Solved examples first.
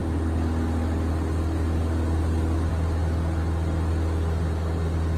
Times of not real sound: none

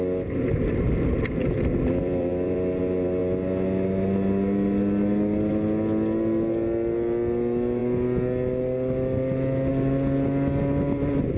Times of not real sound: 1.4-2.8